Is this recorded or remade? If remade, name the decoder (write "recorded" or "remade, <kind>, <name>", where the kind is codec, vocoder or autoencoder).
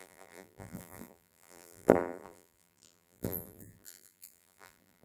remade, vocoder, BigVGAN v2